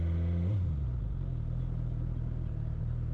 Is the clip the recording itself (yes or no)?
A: yes